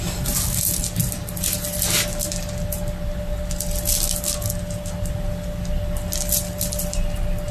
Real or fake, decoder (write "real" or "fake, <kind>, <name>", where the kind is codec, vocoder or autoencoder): real